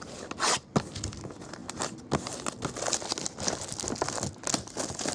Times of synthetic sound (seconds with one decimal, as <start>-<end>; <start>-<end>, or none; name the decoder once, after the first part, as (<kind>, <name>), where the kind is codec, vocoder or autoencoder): none